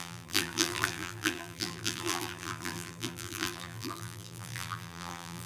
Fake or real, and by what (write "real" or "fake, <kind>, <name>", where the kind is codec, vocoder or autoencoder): fake, vocoder, BigVGAN v2